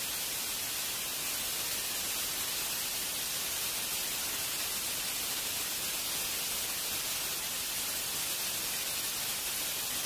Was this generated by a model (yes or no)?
no